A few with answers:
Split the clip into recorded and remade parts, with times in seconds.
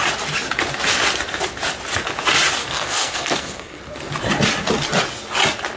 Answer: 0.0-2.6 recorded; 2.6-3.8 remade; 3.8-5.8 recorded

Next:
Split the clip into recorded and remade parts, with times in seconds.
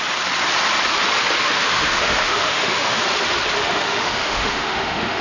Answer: 0.0-1.4 recorded; 1.4-3.0 remade; 3.0-3.6 recorded; 3.6-5.2 remade